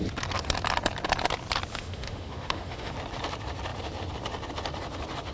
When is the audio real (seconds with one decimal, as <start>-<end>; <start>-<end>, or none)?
0.0-1.7; 2.9-5.3